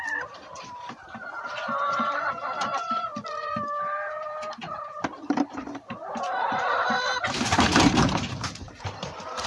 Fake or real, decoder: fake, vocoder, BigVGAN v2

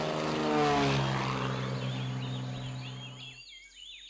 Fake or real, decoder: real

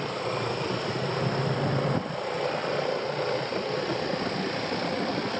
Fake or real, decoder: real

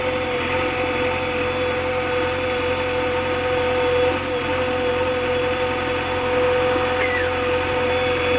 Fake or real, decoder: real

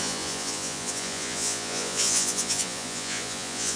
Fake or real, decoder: fake, vocoder, Vocos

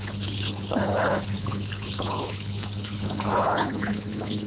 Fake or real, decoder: fake, codec, HILCodec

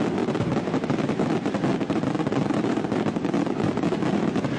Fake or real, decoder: real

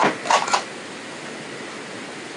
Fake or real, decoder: real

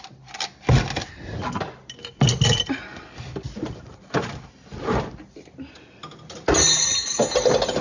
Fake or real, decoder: real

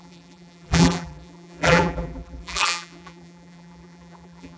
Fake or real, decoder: fake, vocoder, BigVGAN v2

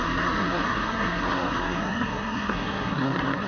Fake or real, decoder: fake, codec, SNAC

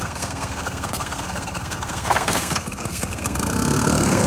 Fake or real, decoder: fake, codec, SNAC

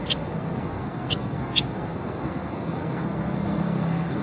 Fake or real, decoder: fake, codec, SNAC